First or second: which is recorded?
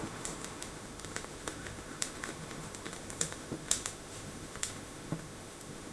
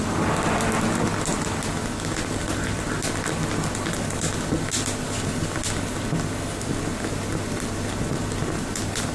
second